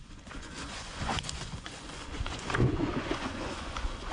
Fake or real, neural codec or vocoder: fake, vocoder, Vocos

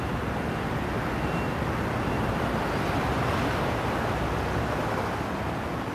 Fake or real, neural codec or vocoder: real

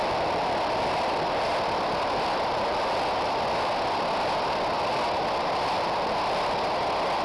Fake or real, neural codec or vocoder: real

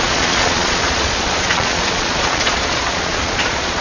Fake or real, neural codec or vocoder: fake, vocoder, Vocos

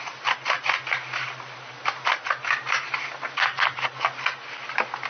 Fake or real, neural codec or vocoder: real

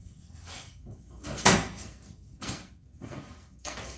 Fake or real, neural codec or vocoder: fake, codec, SNAC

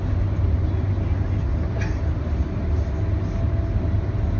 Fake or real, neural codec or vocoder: real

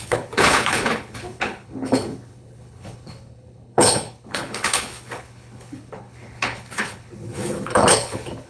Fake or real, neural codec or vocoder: fake, codec, HILCodec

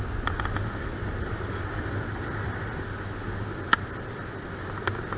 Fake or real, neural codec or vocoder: real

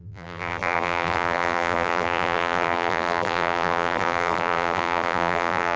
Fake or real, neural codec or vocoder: fake, vocoder, BigVGAN v2